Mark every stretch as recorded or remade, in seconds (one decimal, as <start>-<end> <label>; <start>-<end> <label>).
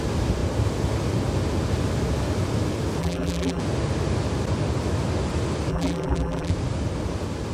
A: 0.0-3.0 recorded; 3.0-3.6 remade; 3.6-5.7 recorded; 5.7-6.5 remade; 6.5-7.5 recorded